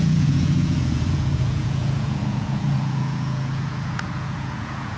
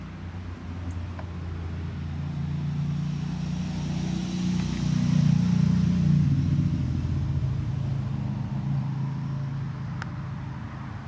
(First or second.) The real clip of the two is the second